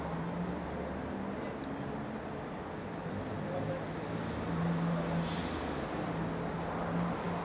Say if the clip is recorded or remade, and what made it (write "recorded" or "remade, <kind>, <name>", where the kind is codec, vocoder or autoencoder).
recorded